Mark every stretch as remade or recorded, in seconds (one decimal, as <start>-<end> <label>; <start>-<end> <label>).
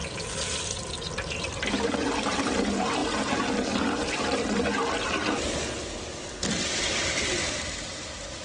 0.0-8.4 recorded